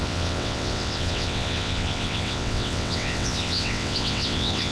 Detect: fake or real fake